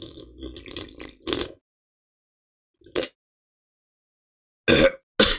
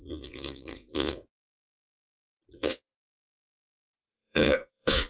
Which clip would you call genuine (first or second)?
first